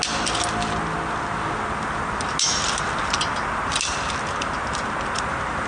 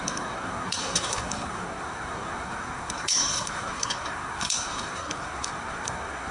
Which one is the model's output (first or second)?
second